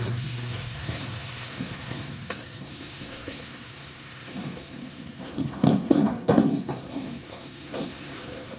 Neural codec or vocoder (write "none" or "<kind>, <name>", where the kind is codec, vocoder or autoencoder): codec, SNAC